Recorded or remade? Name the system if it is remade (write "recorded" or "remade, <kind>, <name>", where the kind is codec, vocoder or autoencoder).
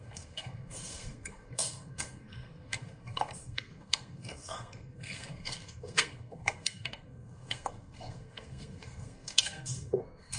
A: remade, codec, SNAC